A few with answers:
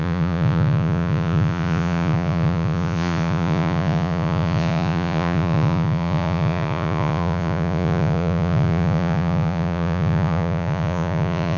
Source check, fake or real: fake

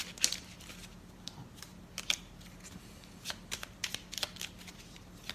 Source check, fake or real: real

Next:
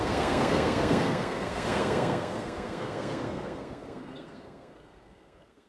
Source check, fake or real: fake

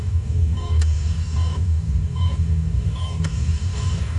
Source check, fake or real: fake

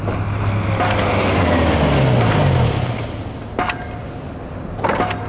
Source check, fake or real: real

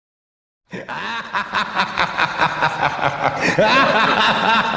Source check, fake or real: real